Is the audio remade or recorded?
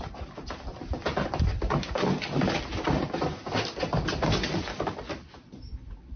recorded